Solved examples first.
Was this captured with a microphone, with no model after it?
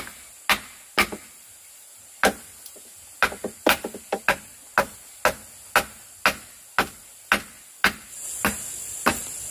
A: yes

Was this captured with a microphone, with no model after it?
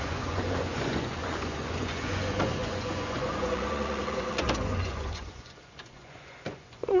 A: no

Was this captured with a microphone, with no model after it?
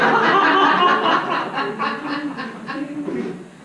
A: yes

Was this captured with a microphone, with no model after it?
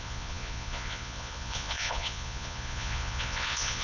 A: no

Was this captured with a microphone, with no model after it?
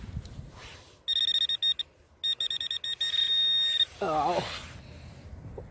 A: yes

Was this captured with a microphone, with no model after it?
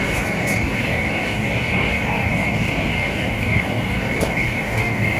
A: no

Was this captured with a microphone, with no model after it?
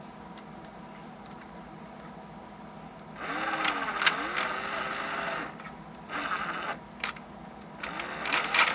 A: yes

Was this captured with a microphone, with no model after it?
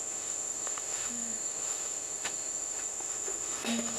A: no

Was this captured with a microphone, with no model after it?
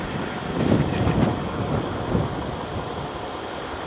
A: yes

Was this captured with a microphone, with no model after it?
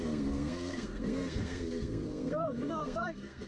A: no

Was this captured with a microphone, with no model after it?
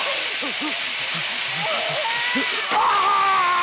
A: yes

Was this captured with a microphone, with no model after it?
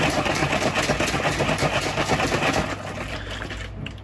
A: yes